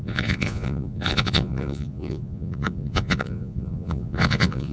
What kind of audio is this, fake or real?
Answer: fake